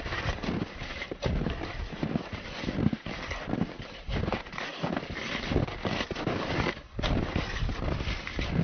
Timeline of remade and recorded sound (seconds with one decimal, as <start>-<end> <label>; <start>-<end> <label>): 0.0-8.6 recorded